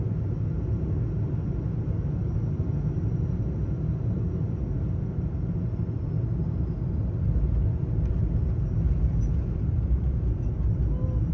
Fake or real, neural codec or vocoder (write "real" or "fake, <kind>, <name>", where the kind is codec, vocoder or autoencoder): real